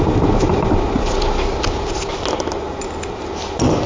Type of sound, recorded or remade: recorded